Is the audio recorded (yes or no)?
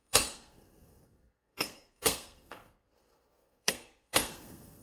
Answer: no